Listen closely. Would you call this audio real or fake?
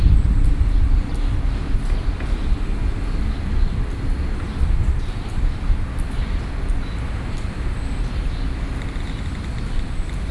real